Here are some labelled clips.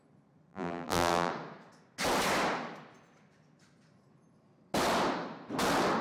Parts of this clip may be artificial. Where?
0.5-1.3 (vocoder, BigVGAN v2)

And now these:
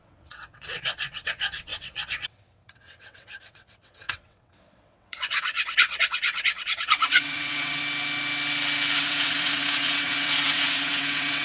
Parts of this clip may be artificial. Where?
0.0-7.8 (vocoder, WaveNeXt); 9.0-11.4

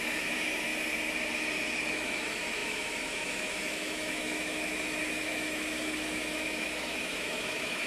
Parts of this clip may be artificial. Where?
0.0-0.7 (autoencoder, DAC-VAE); 1.9-7.9

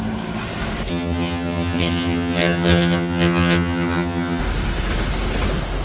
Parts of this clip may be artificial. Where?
0.9-4.4 (vocoder, HiFi-GAN)

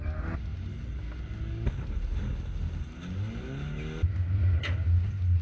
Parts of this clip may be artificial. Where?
none

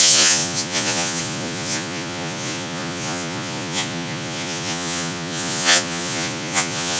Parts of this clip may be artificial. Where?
0.0-7.0 (vocoder, Vocos)